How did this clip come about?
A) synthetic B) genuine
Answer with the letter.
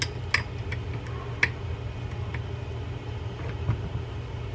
B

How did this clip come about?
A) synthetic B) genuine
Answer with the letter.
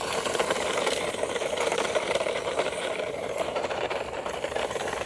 A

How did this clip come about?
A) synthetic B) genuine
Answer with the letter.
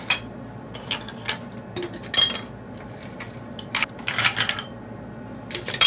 B